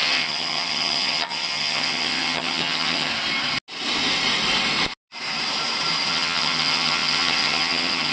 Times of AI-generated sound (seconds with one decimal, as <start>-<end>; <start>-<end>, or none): 0.0-3.1; 6.1-8.1